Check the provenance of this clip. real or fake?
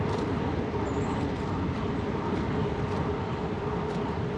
real